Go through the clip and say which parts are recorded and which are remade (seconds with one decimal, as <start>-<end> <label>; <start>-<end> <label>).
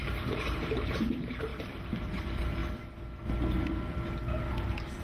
0.0-2.6 remade; 2.6-4.5 recorded; 4.5-5.0 remade